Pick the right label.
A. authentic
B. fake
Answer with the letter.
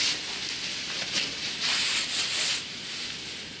A